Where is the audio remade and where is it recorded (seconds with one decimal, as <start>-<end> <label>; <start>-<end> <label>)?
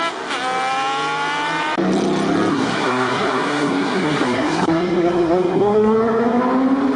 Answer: 0.0-2.5 recorded; 2.5-6.4 remade; 6.4-7.0 recorded